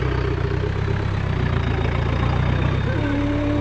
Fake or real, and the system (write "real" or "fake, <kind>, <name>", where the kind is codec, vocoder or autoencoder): real